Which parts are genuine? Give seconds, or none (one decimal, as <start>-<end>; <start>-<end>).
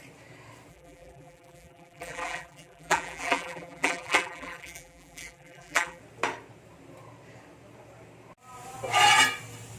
0.0-0.7; 6.0-9.8